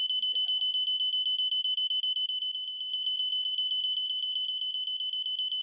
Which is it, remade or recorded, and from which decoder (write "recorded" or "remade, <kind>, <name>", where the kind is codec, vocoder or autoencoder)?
recorded